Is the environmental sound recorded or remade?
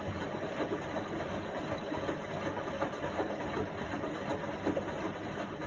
recorded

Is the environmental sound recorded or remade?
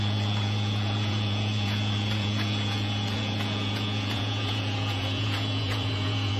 remade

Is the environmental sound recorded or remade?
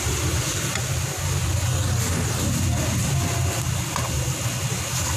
recorded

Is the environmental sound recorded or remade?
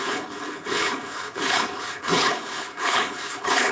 remade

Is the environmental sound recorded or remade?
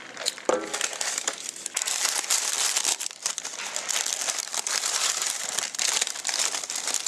remade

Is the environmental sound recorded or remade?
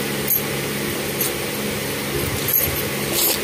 recorded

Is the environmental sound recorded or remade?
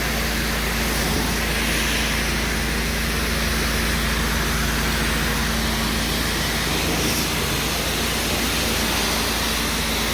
recorded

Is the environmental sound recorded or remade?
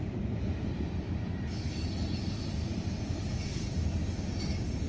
recorded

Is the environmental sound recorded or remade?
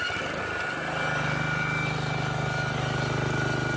recorded